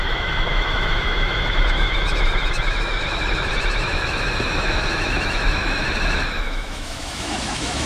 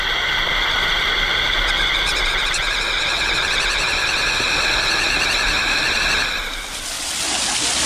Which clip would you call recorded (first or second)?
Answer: second